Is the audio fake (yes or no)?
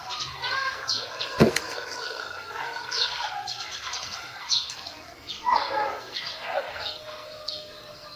yes